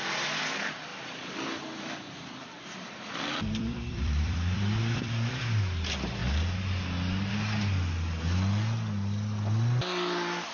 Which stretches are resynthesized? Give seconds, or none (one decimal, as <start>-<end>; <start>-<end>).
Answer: 0.9-5.3